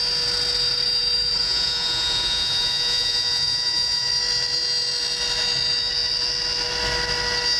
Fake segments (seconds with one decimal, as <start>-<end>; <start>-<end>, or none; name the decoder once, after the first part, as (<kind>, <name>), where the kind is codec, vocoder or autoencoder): 1.4-4.1 (vocoder, Vocos)